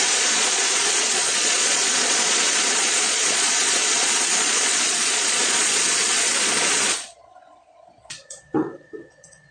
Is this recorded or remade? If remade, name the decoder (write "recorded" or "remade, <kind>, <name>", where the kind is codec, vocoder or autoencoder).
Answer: remade, vocoder, Vocos